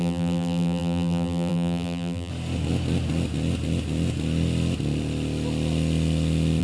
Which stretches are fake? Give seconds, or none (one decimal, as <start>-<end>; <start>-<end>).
0.0-2.3